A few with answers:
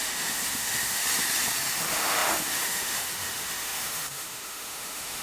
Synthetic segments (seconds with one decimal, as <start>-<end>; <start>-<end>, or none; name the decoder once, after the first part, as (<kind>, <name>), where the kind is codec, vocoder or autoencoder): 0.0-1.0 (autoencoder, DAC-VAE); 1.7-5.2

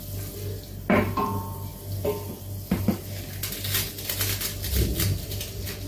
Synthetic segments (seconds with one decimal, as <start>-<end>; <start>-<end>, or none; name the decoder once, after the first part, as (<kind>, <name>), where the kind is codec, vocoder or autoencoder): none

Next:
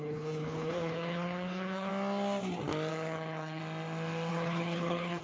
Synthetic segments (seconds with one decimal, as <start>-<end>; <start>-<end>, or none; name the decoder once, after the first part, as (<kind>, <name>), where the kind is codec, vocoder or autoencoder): 0.0-1.9 (codec, HILCodec); 2.9-3.6; 4.3-5.2

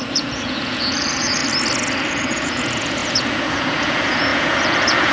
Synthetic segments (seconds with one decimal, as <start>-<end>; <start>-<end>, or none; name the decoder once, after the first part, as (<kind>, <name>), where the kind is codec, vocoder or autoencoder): 0.0-1.4 (vocoder, Vocos); 2.1-5.1

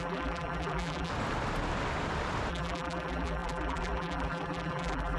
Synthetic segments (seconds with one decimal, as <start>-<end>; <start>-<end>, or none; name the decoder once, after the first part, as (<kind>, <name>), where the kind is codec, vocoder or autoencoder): 0.0-1.1 (vocoder, BigVGAN v2); 2.5-5.2

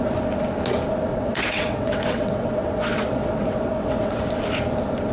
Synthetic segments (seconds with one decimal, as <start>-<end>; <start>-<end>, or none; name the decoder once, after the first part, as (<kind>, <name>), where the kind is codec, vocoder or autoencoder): 1.1-4.2 (vocoder, WaveNeXt)

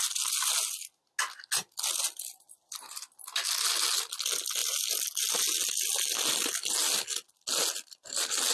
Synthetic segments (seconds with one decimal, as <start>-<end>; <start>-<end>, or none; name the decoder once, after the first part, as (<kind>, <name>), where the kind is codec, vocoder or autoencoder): none